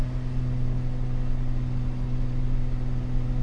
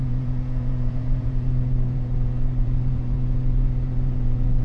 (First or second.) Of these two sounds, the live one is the first